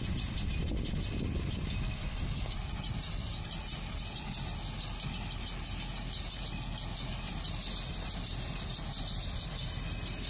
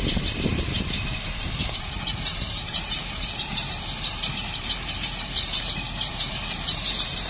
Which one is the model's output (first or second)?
second